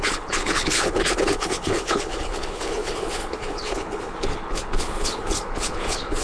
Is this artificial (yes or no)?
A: yes